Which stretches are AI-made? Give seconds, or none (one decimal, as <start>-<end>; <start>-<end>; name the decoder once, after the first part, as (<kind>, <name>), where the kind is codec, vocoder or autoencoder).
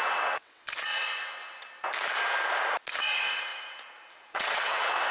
0.0-1.4 (vocoder, WaveNeXt); 2.9-3.5; 4.1-5.1